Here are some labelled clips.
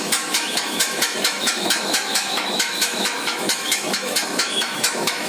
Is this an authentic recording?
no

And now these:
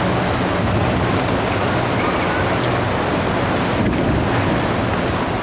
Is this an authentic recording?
yes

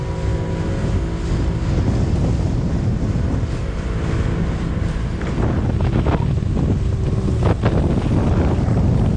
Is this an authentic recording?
yes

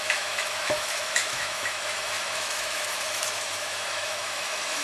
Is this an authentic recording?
no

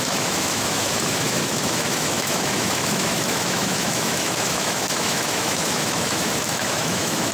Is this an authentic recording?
no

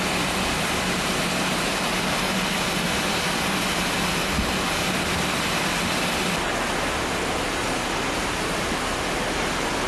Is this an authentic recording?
yes